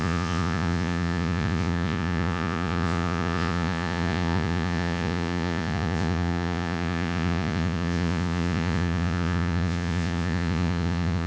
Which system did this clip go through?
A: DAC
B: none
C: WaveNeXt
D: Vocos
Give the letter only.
D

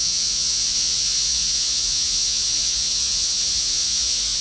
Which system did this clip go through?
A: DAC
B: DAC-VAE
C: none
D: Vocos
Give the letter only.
D